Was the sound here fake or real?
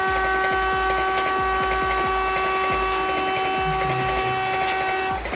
real